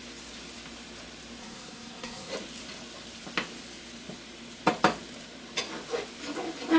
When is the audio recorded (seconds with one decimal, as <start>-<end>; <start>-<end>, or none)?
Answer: 0.0-1.4; 2.3-6.8